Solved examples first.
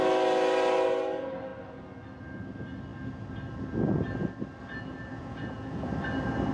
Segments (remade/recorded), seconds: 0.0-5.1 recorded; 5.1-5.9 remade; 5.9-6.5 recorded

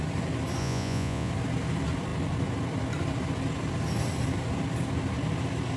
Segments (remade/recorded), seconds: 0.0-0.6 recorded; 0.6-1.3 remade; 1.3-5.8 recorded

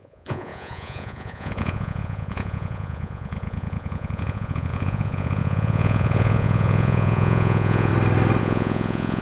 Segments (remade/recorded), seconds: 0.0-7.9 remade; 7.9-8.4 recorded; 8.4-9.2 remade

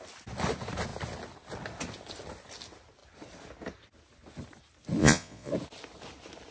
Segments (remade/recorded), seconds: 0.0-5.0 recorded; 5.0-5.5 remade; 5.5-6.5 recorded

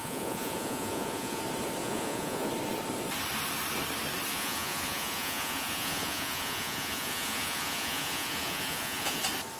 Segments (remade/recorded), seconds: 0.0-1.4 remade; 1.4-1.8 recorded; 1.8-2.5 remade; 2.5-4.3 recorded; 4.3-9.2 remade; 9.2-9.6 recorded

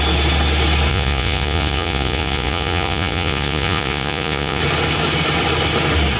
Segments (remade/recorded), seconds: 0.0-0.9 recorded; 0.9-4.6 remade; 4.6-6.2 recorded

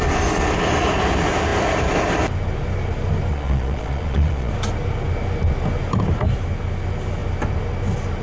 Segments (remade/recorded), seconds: 0.0-3.3 recorded; 3.3-4.5 remade; 4.5-8.2 recorded

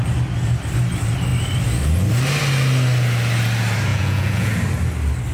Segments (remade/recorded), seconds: 0.0-3.9 recorded; 3.9-4.5 remade; 4.5-5.3 recorded